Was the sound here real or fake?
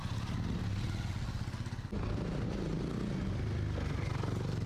real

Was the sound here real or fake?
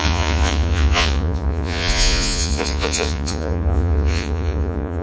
fake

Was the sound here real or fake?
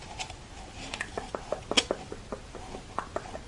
real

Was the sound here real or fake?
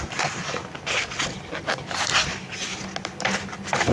real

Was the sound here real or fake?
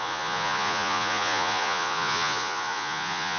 fake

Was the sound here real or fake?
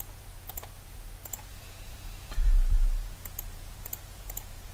fake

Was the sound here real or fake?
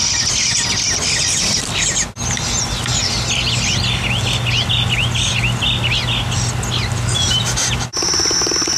real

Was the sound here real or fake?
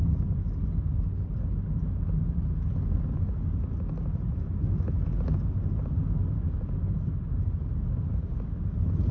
real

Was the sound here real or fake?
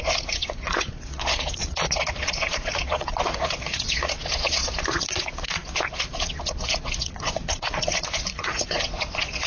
fake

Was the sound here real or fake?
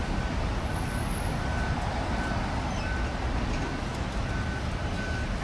real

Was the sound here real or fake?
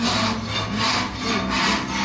real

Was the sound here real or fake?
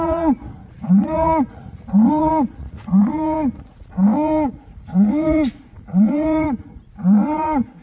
fake